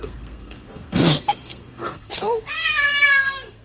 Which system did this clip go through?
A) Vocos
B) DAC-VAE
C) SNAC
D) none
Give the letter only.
C